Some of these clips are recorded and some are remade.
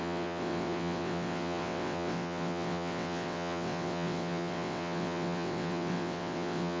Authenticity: remade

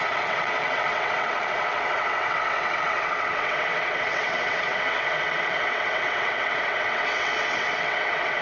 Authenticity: remade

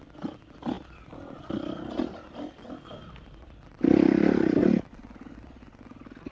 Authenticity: recorded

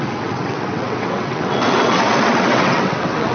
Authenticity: remade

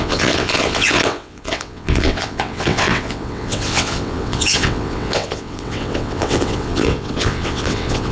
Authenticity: remade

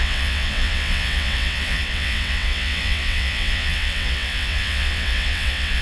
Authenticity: remade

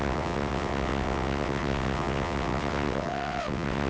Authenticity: remade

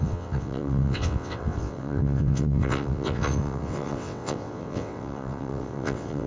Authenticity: remade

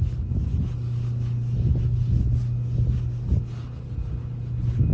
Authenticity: recorded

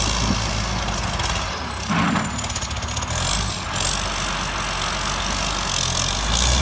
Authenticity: recorded